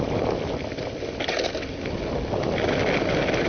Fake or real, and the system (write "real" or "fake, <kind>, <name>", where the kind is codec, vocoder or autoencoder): real